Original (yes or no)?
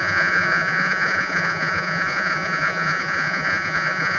no